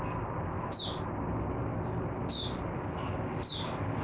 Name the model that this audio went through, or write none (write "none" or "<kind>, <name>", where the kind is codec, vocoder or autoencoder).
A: none